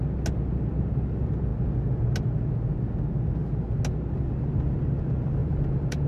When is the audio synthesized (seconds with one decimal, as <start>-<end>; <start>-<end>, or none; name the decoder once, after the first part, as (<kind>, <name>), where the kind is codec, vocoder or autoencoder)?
5.4-6.1 (vocoder, BigVGAN v2)